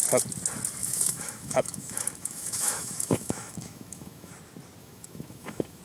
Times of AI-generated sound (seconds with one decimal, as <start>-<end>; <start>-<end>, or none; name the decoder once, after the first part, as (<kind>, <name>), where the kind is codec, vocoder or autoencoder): 0.8-4.3 (autoencoder, DAC-VAE); 4.8-5.8